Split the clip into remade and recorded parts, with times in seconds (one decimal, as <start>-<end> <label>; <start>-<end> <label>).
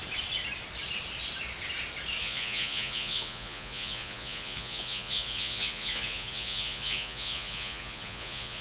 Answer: 0.0-2.2 recorded; 2.2-8.6 remade